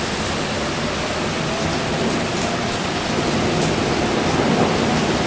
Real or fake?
real